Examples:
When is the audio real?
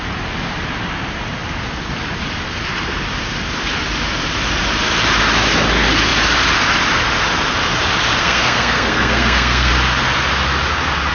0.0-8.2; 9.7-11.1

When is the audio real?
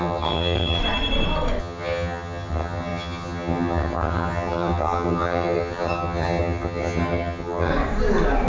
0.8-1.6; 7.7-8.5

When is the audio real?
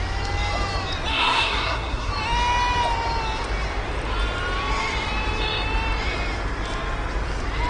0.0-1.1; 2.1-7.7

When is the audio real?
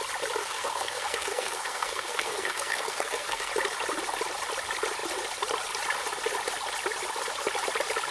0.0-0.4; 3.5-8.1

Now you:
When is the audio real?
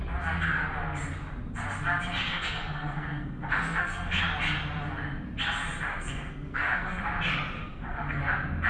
0.0-2.3; 4.2-5.9; 7.0-7.6; 8.2-8.7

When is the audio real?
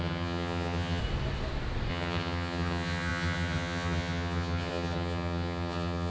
1.0-1.9